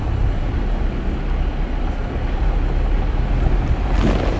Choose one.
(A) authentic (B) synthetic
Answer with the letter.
A